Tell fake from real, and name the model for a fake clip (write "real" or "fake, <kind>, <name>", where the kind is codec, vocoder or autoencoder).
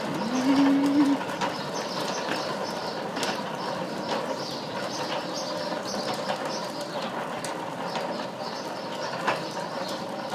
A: real